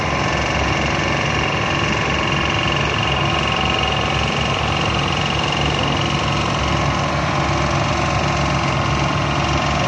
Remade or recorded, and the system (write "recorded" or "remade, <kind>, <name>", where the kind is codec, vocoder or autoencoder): recorded